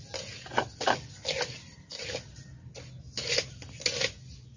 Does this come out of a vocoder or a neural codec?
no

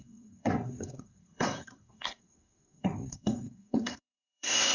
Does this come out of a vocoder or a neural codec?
yes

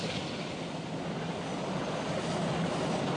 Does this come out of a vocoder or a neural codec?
no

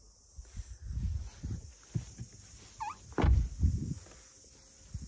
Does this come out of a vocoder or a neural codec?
no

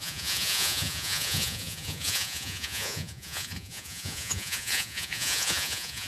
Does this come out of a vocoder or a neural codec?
yes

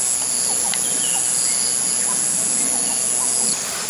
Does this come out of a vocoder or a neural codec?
no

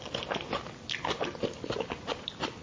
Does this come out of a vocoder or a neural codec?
no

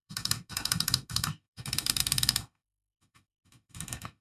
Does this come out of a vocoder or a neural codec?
yes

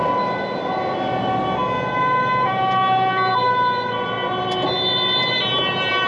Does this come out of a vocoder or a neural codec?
no